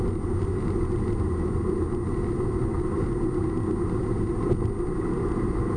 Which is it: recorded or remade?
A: recorded